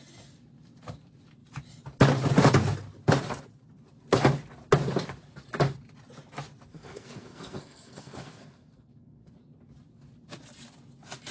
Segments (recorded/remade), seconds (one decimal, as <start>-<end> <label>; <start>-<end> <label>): 0.0-6.7 recorded; 6.7-9.3 remade; 9.3-11.3 recorded